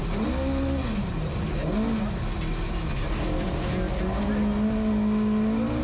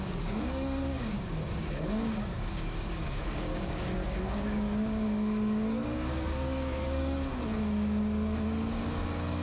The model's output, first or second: second